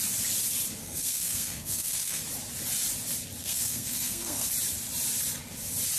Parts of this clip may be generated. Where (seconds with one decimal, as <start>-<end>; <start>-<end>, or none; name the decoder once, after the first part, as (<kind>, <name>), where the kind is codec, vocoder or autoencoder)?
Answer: 0.8-2.2 (codec, SNAC); 3.4-4.5

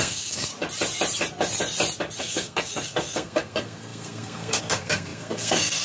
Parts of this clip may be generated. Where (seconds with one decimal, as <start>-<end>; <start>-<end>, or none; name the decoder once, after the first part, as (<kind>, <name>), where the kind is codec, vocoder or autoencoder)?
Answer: 0.0-0.5 (codec, SNAC); 2.2-5.8

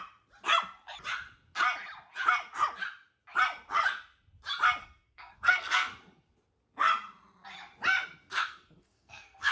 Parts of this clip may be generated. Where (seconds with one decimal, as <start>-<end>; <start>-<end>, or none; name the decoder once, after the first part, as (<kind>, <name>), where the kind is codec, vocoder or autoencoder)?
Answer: 4.8-5.9 (codec, SNAC); 8.3-9.5

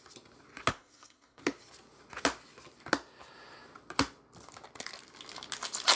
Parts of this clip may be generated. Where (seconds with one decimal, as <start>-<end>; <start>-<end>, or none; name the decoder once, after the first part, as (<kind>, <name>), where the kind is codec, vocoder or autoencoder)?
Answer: 0.7-1.4 (codec, SNAC)